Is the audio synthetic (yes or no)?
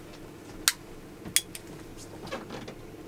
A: no